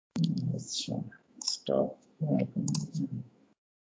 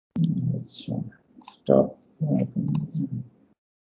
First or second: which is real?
second